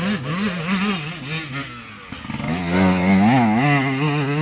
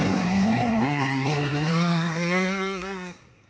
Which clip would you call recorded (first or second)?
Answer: first